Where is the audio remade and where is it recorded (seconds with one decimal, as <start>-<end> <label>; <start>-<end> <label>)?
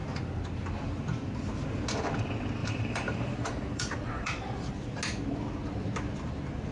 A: 0.0-2.6 recorded; 2.6-4.7 remade; 4.7-6.7 recorded